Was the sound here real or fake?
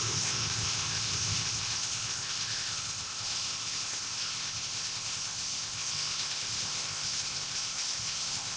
fake